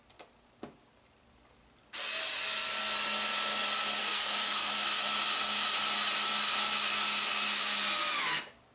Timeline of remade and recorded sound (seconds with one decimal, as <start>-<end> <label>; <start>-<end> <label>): 0.0-4.0 recorded; 4.0-4.7 remade; 4.7-8.7 recorded